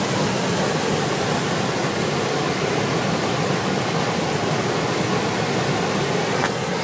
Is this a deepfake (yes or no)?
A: no